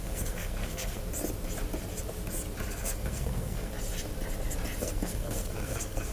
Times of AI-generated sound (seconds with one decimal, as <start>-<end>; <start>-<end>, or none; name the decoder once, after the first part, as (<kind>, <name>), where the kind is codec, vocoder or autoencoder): 0.0-1.0 (codec, SNAC); 2.7-3.7; 4.8-6.1